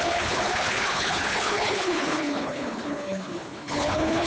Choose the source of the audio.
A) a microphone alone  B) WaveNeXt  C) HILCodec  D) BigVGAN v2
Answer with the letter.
C